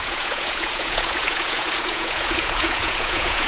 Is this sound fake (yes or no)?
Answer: yes